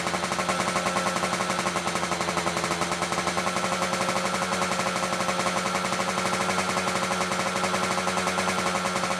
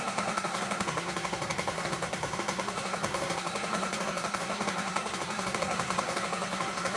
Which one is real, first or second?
first